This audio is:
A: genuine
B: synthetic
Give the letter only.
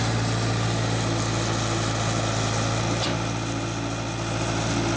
A